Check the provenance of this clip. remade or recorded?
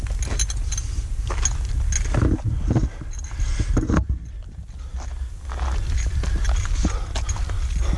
recorded